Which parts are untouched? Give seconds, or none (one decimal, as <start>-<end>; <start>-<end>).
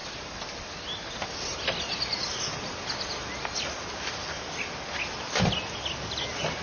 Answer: 0.0-6.6